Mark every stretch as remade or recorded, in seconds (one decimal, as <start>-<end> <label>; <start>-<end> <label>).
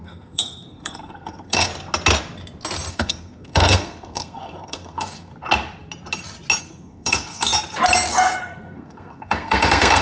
0.0-1.7 remade; 1.7-2.9 recorded; 2.9-5.3 remade; 5.3-6.6 recorded; 6.6-7.5 remade; 7.5-8.1 recorded; 8.1-10.0 remade